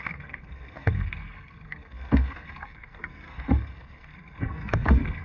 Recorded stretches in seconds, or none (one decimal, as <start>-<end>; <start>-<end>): none